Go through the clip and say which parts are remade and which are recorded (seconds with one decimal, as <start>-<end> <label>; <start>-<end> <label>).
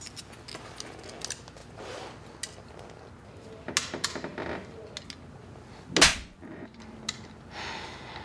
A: 0.0-6.1 recorded; 6.1-6.8 remade; 6.8-8.2 recorded